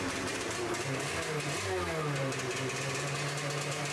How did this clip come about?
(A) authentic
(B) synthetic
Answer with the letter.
A